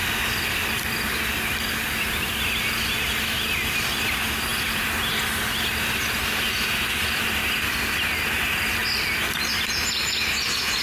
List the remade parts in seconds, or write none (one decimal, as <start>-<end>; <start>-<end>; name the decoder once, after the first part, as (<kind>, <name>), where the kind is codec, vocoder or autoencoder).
none